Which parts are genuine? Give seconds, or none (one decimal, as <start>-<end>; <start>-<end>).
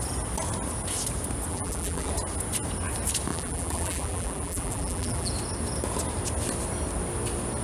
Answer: 0.0-1.5; 2.1-3.3; 5.3-7.6